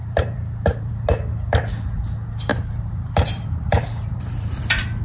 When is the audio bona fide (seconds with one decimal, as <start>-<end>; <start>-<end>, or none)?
0.9-2.5; 4.6-5.0

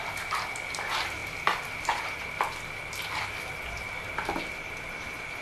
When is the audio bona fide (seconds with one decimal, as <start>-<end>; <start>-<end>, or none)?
0.0-5.4

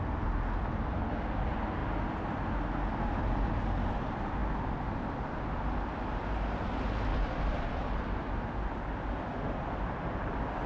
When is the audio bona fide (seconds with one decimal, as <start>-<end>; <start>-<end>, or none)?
0.0-7.1; 8.3-10.7